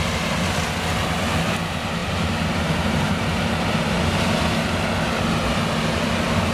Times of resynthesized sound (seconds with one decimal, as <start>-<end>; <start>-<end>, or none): 2.0-3.7